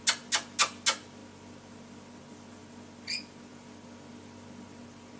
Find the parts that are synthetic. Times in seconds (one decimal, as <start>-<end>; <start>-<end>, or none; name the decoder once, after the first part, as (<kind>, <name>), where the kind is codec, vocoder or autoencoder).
none